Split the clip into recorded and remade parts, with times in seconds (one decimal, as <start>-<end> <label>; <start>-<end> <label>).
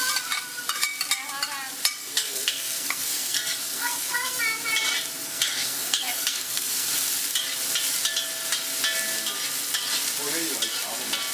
0.0-2.0 recorded; 2.0-4.4 remade; 4.4-5.2 recorded; 5.2-6.9 remade; 6.9-11.3 recorded